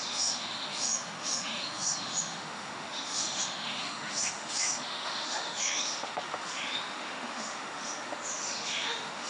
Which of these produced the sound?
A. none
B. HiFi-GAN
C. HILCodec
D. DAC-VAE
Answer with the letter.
D